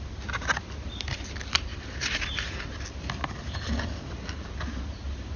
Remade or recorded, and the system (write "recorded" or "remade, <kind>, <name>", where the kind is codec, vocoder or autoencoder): recorded